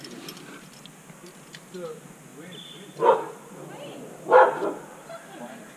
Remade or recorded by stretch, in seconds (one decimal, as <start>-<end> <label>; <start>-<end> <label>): 0.0-2.3 recorded; 2.3-5.8 remade